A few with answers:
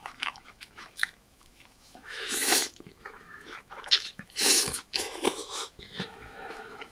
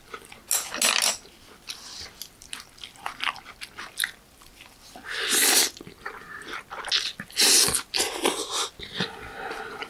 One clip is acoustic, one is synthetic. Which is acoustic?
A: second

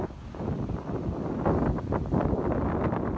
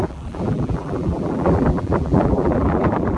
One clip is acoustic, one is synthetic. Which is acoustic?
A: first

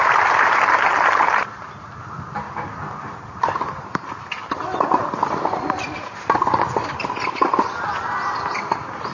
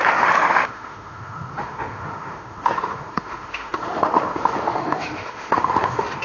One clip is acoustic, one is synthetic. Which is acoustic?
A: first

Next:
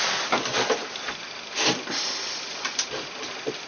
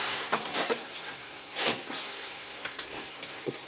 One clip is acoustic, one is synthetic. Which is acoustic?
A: first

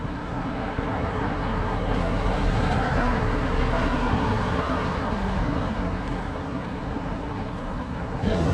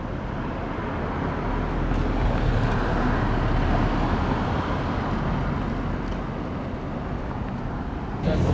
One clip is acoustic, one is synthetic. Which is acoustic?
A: second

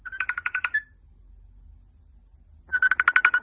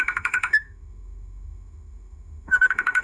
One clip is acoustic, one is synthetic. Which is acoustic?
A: first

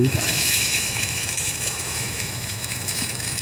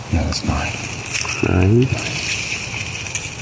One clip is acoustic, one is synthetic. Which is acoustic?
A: second